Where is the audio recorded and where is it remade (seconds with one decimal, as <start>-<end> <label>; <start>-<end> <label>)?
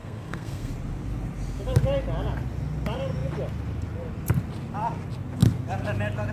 0.0-0.7 remade; 0.7-6.3 recorded